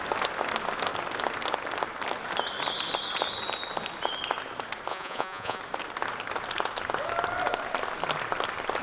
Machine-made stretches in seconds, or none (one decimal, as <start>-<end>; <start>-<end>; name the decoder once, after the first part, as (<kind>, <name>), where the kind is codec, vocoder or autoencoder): 4.9-5.6 (vocoder, Vocos)